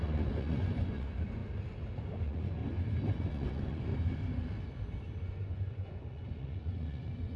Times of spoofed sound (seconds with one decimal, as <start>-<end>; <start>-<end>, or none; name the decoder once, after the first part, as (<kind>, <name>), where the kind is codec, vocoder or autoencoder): 0.0-1.4 (vocoder, Vocos); 2.2-2.6; 3.3-3.9; 5.2-7.4